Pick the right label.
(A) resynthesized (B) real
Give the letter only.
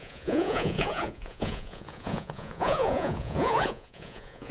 A